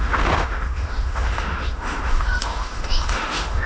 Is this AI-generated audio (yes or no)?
yes